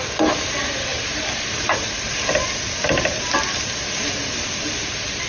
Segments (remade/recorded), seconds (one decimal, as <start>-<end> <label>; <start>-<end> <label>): 0.0-0.9 recorded; 0.9-4.1 remade; 4.1-5.3 recorded